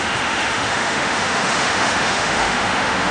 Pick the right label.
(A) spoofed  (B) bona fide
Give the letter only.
A